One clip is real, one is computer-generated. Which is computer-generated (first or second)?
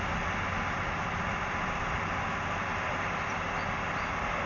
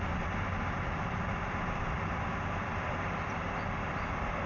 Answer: second